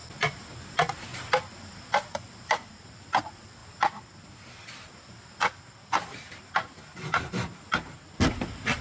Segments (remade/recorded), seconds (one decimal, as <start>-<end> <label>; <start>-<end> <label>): 0.0-1.1 remade; 1.1-1.6 recorded; 1.6-3.6 remade; 3.6-7.6 recorded; 7.6-8.8 remade